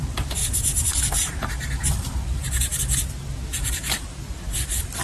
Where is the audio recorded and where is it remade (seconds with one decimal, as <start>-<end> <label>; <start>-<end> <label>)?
0.0-5.0 recorded